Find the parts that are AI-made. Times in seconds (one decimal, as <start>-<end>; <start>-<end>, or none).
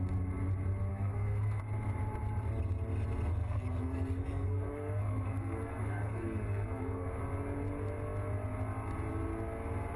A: 0.9-1.6; 3.4-7.2